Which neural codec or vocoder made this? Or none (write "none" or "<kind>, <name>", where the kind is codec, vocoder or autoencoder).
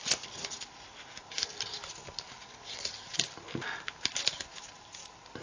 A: none